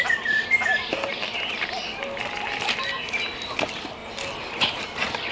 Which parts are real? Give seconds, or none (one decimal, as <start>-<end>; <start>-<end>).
0.0-5.3